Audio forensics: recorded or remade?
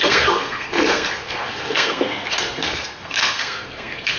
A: remade